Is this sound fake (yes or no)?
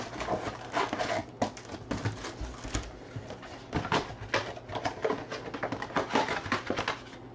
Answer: no